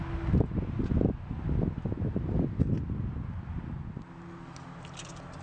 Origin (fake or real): real